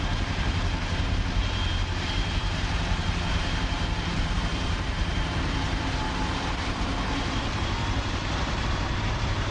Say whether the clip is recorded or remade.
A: remade